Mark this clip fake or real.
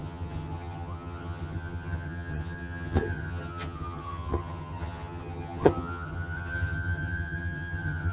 fake